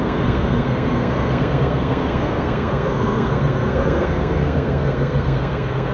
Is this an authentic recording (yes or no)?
no